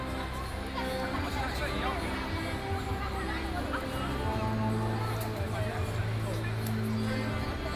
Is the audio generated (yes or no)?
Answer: no